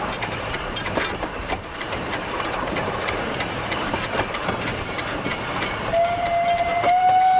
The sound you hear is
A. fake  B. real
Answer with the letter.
A